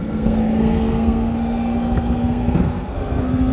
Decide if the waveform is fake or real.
fake